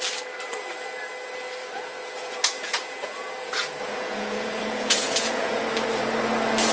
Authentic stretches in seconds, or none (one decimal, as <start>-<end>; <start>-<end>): 0.0-1.6; 5.6-6.7